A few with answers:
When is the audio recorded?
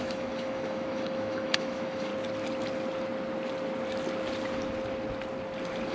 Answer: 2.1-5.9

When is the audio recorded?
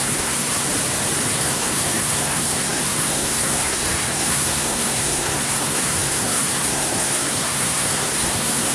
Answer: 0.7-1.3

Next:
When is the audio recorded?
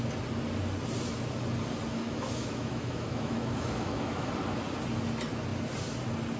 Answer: 0.0-1.9; 4.3-6.4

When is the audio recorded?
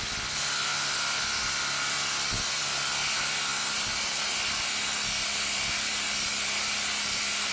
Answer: 0.0-0.7; 2.3-7.5